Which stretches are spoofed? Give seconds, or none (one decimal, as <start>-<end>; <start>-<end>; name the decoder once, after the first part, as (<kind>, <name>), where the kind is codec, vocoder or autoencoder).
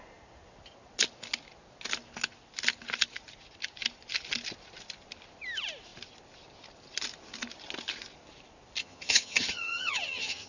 8.8-10.5 (vocoder, HiFi-GAN)